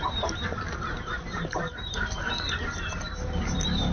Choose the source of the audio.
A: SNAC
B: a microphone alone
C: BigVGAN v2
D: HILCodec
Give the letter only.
C